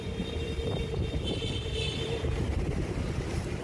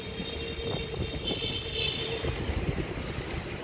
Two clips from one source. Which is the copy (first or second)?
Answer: first